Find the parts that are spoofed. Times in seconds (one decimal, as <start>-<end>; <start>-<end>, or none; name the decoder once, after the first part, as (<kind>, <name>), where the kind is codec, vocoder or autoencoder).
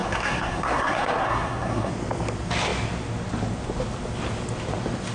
0.0-1.9 (codec, SNAC)